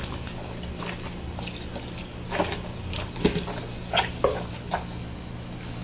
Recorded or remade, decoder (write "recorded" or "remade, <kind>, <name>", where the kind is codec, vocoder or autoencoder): recorded